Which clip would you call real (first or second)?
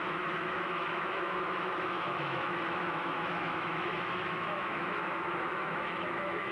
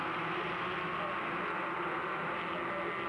second